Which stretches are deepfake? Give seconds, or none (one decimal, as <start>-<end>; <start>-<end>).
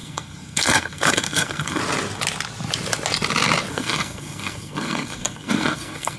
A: 0.0-1.8; 3.7-6.2